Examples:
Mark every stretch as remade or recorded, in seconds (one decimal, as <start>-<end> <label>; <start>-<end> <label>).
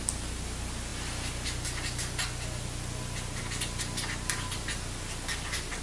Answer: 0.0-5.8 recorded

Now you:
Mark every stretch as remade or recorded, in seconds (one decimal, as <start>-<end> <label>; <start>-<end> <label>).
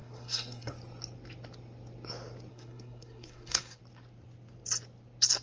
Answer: 0.0-0.7 remade; 0.7-2.5 recorded; 2.5-3.8 remade; 3.8-5.4 recorded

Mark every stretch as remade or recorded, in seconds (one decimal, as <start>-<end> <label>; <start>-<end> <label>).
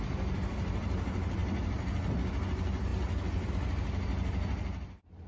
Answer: 0.0-5.3 recorded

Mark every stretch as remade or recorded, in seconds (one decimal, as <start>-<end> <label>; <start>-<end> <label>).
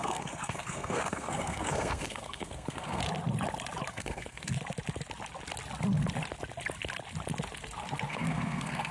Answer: 0.0-3.0 remade; 3.0-3.9 recorded; 3.9-4.5 remade; 4.5-8.1 recorded; 8.1-8.9 remade